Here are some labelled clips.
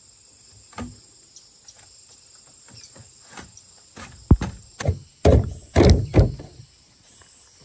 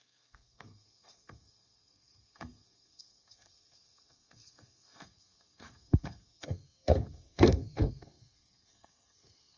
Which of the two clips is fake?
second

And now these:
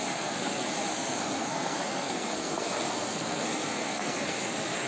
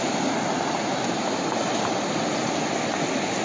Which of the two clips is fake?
first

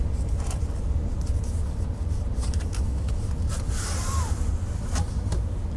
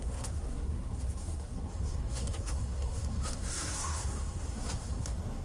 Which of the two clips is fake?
second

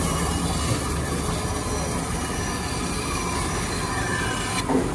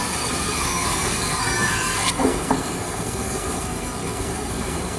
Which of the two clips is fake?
second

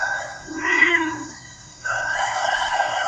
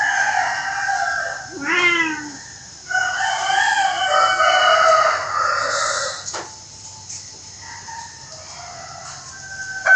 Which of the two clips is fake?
first